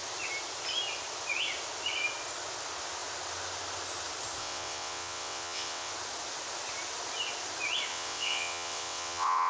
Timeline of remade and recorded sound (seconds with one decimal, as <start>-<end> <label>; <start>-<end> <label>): 0.0-4.4 recorded; 4.4-5.9 remade; 5.9-7.9 recorded; 7.9-9.5 remade